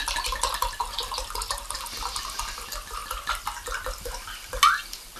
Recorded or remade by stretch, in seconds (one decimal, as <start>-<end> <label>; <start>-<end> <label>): 0.0-5.2 recorded